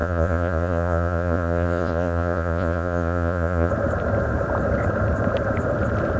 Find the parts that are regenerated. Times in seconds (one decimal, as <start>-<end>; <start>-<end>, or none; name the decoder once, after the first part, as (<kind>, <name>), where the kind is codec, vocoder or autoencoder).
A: 0.0-3.7 (vocoder, Vocos)

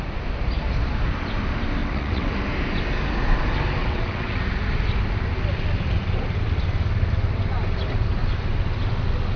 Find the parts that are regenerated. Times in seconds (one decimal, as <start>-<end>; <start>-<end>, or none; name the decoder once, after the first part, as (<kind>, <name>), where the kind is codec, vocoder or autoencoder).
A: 1.8-2.3 (vocoder, WaveNeXt); 3.8-4.4